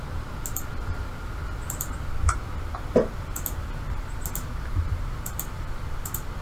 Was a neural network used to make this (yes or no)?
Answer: no